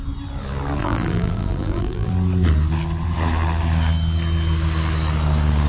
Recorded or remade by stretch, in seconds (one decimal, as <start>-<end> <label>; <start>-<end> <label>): 0.0-0.8 recorded; 0.8-2.1 remade; 2.1-5.7 recorded